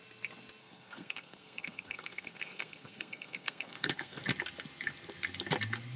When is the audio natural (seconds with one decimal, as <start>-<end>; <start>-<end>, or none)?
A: 0.0-0.6; 4.2-6.0